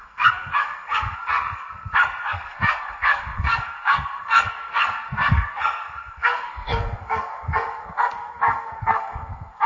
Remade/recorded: remade